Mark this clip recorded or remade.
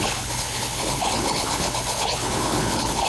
remade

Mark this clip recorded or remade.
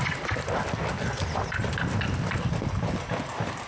recorded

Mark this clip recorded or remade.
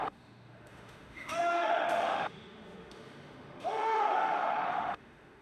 remade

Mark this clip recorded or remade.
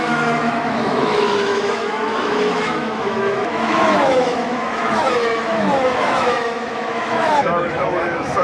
remade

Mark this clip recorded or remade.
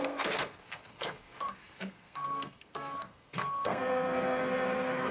remade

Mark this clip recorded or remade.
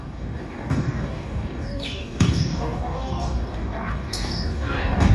remade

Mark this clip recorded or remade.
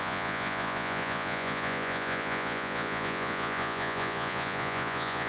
remade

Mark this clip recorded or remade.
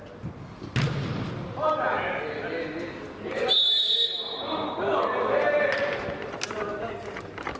recorded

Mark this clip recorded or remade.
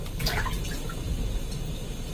recorded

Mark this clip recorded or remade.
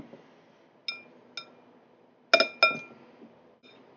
recorded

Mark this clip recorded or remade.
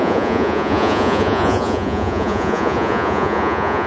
remade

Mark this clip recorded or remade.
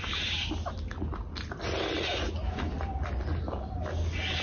recorded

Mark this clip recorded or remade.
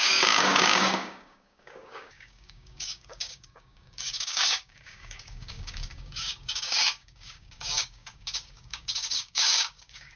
remade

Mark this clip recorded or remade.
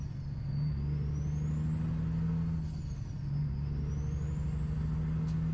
recorded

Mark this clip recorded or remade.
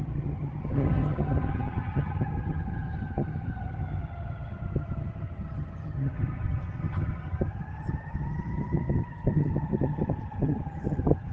remade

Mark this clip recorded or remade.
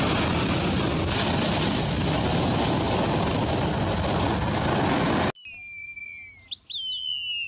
recorded